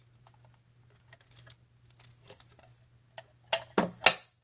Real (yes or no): yes